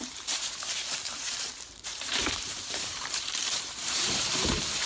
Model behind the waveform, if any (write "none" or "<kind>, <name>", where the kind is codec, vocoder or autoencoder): vocoder, BigVGAN v2